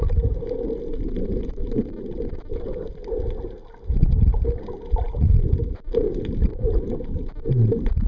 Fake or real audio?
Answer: real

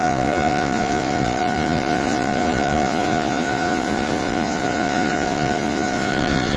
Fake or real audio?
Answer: fake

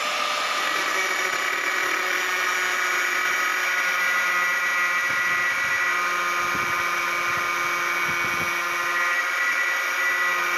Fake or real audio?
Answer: real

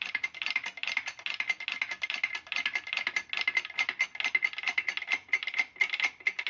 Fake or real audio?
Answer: real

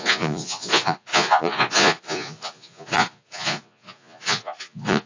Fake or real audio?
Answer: fake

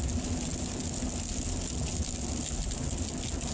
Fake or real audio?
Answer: real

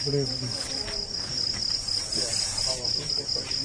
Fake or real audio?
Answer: real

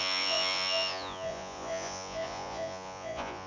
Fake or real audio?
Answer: fake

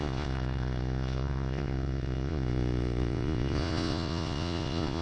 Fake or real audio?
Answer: fake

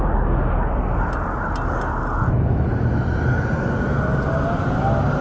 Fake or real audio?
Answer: real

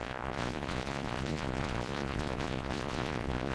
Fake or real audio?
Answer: fake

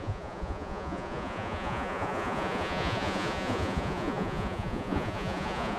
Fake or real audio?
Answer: fake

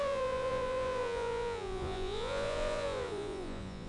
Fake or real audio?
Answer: fake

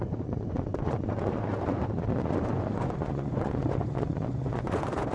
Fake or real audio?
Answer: fake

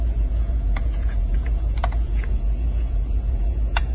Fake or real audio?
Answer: fake